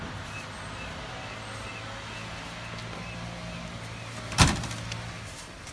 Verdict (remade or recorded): recorded